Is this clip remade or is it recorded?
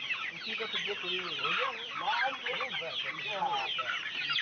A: recorded